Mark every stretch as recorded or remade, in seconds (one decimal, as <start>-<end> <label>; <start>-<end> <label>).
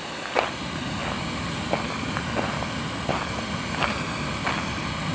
0.0-5.1 recorded